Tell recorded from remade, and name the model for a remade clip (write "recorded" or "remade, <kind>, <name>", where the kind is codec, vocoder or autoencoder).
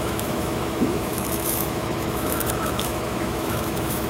remade, autoencoder, DAC-VAE